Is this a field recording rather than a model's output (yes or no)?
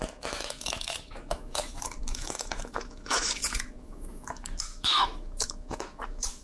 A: no